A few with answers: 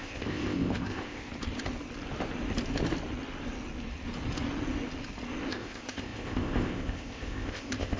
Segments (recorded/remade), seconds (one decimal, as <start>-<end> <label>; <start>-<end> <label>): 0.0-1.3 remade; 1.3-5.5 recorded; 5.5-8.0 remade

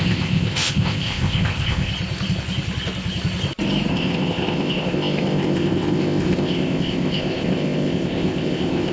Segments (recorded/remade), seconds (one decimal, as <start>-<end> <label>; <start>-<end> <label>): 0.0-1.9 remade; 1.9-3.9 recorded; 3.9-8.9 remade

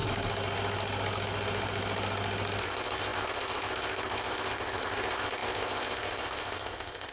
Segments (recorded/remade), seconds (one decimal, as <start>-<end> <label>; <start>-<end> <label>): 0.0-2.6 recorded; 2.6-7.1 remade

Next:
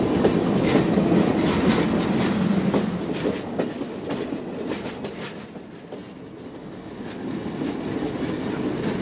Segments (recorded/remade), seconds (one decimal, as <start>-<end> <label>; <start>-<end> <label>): 0.0-9.0 recorded